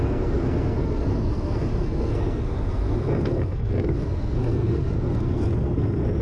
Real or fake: fake